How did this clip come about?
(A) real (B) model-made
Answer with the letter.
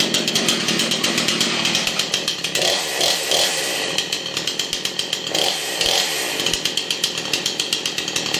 A